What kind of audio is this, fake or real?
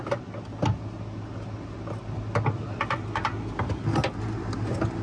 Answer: real